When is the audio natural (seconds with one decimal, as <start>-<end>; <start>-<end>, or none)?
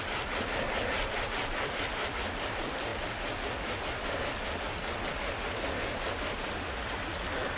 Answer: 0.0-7.6